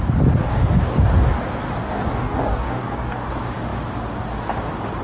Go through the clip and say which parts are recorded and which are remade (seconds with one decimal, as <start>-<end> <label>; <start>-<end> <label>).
0.0-0.5 recorded; 0.5-1.4 remade; 1.4-1.8 recorded; 1.8-3.3 remade; 3.3-5.0 recorded